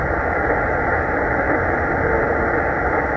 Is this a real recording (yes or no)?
yes